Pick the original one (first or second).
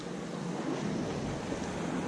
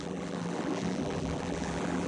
first